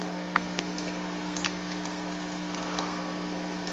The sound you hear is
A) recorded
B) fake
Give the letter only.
B